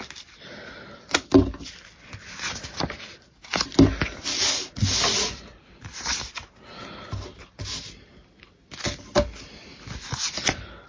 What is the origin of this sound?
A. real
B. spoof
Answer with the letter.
A